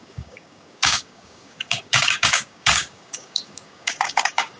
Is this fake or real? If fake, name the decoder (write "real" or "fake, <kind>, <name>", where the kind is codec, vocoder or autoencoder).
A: fake, codec, DAC